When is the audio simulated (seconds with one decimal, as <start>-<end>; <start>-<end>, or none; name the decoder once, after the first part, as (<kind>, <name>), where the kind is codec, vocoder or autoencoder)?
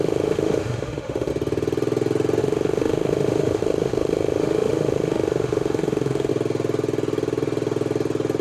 0.0-1.3 (autoencoder, DAC-VAE); 2.4-6.3